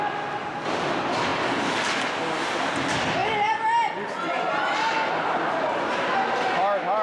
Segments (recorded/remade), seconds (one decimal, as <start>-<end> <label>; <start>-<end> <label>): 0.0-7.0 recorded